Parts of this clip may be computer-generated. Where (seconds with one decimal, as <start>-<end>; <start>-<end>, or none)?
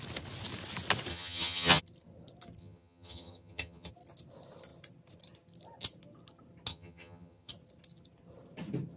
1.1-1.8; 2.6-3.9; 6.7-7.5